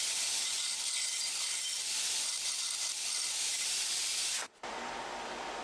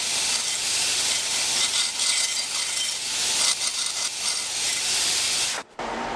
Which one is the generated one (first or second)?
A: first